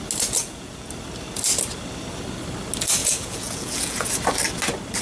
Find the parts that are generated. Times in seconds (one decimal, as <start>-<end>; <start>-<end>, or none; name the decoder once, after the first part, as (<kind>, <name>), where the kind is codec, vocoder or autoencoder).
0.4-0.9 (vocoder, Vocos); 3.0-4.1